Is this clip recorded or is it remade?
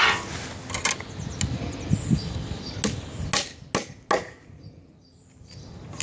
recorded